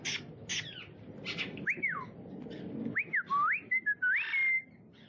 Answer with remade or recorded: recorded